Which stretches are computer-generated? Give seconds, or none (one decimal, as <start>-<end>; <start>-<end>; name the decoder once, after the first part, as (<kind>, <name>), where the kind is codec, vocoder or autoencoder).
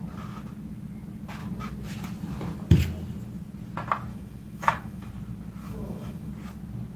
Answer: 4.1-5.1 (autoencoder, DAC-VAE); 5.6-6.3